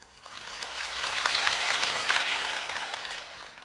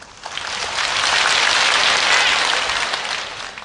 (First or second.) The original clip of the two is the second